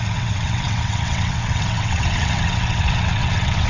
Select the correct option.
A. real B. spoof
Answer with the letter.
B